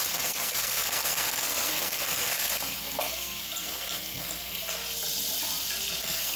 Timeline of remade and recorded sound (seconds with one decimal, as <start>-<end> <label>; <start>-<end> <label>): 0.0-4.8 remade; 4.8-6.0 recorded; 6.0-6.4 remade